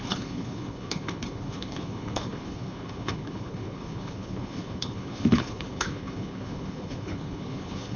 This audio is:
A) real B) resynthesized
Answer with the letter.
B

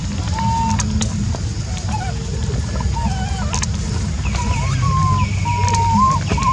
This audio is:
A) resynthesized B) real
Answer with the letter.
B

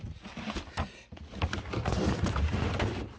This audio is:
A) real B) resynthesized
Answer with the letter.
A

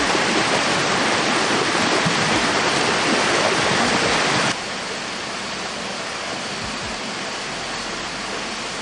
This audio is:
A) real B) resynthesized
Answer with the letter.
A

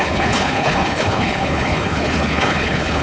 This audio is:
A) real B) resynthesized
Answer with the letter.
B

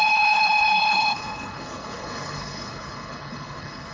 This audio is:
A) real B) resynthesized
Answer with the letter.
B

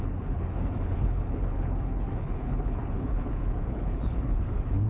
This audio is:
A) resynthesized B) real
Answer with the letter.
A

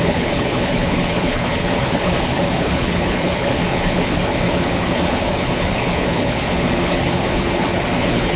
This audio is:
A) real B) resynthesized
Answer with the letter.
B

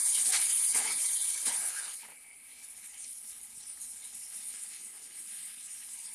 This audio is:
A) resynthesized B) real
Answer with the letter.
A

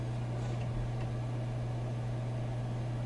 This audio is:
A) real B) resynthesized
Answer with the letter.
A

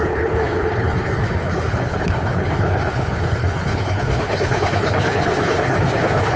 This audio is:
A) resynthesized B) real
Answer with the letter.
A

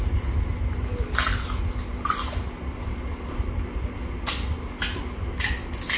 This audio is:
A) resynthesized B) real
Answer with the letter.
B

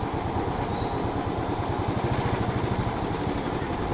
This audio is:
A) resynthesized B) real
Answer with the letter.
B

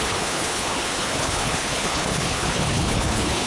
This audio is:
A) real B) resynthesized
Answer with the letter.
B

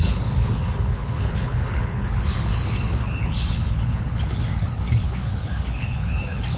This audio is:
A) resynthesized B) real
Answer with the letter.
A